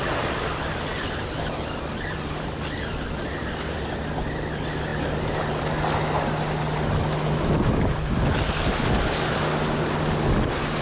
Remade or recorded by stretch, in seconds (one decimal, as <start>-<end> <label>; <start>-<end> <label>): 0.0-10.8 recorded